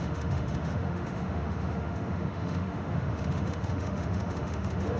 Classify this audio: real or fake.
fake